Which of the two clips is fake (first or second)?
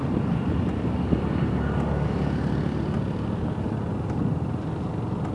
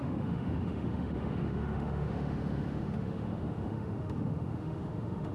second